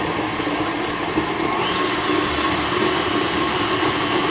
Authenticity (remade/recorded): recorded